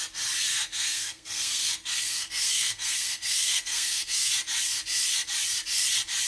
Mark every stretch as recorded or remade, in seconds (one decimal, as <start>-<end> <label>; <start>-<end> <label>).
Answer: 0.0-0.5 recorded; 0.5-4.3 remade; 4.3-6.3 recorded